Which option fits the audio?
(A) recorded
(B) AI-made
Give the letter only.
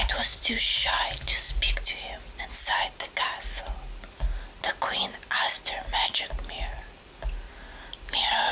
A